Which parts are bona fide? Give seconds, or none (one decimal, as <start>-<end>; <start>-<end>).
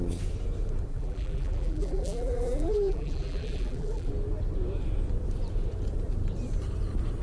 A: 0.0-0.9; 4.1-7.2